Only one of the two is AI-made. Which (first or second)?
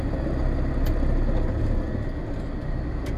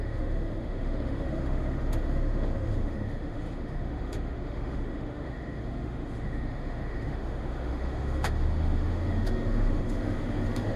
second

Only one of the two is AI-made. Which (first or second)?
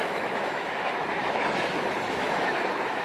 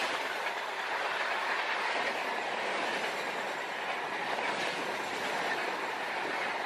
first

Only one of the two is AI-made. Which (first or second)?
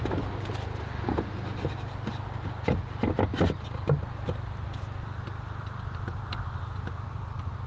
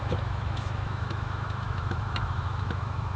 second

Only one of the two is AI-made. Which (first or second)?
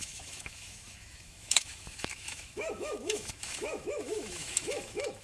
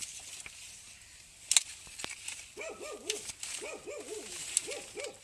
first